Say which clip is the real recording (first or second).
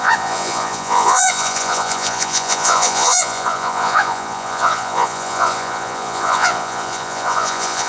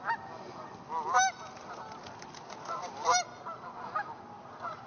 second